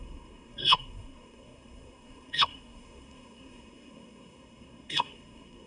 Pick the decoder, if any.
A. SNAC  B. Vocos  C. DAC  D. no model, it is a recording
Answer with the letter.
A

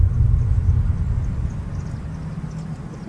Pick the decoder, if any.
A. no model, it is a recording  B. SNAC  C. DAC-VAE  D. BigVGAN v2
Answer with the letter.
A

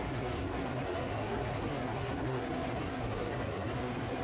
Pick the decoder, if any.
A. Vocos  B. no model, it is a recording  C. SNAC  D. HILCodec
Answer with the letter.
C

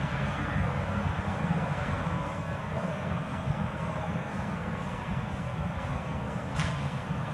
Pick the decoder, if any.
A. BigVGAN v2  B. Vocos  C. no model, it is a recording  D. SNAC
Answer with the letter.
D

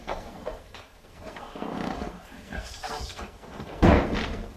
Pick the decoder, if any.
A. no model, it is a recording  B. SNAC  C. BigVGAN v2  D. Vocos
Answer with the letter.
B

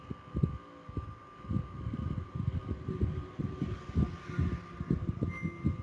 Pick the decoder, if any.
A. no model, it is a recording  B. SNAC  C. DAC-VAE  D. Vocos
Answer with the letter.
A